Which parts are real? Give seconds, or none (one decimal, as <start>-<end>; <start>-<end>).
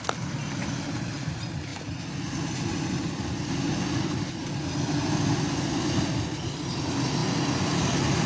0.0-7.2; 7.8-8.3